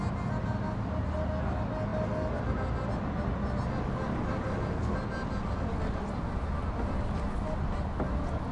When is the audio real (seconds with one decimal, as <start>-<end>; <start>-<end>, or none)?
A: 0.0-8.5